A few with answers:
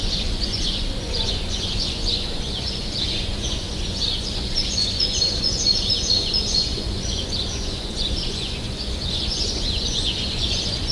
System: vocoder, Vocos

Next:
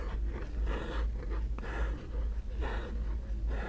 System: none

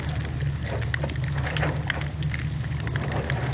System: none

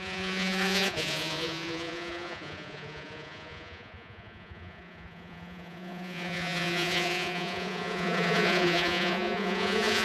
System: vocoder, Vocos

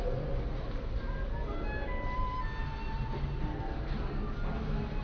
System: none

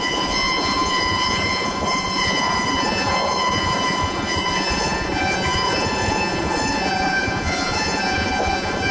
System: vocoder, Vocos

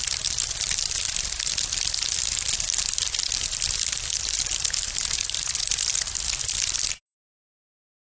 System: none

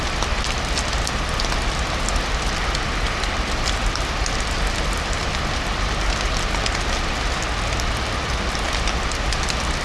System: none